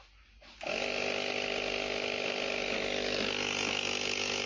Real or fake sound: real